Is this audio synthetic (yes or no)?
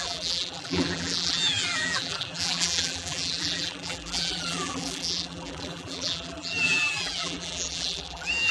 yes